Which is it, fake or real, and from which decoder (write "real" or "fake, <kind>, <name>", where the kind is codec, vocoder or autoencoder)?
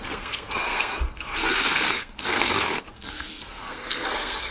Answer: fake, codec, SNAC